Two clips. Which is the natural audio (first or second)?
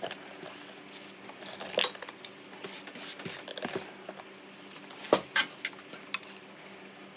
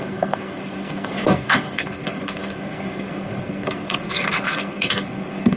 first